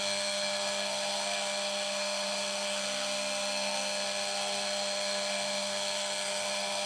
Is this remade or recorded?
remade